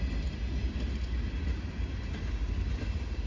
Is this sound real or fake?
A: real